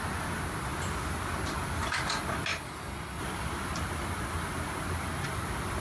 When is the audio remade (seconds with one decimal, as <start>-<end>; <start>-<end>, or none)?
2.5-3.2